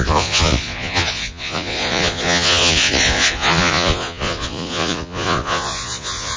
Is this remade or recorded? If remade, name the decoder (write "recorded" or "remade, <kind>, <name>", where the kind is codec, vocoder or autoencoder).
remade, vocoder, Vocos